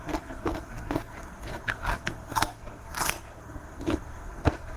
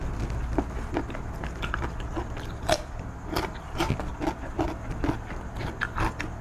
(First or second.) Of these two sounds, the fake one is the first